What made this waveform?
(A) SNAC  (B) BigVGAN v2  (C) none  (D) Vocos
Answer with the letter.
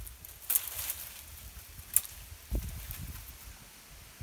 C